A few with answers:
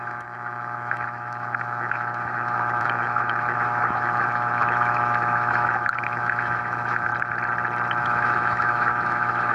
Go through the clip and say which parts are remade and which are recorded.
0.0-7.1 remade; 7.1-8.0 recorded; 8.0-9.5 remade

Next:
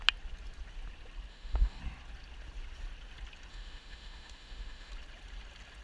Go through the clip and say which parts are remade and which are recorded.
0.0-1.3 recorded; 1.3-1.8 remade; 1.8-3.5 recorded; 3.5-4.9 remade; 4.9-5.8 recorded

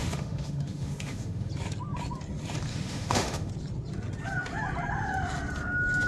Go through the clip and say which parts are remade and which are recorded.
0.0-1.5 remade; 1.5-2.7 recorded; 2.7-3.5 remade; 3.5-6.1 recorded

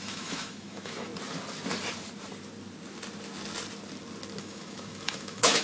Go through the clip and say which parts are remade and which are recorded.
0.0-1.1 remade; 1.1-4.4 recorded; 4.4-5.6 remade

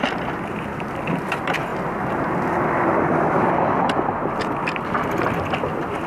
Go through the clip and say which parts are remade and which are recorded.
0.0-6.1 recorded

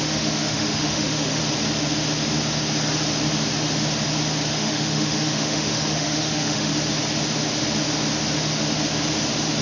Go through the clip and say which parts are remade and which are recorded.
0.0-1.4 remade; 1.4-4.5 recorded; 4.5-6.7 remade; 6.7-9.6 recorded

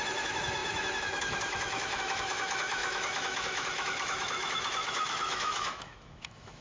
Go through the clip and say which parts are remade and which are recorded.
0.0-6.6 remade